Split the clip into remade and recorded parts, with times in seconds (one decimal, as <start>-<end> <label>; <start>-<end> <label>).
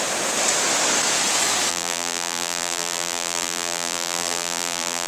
0.0-1.7 recorded; 1.7-5.1 remade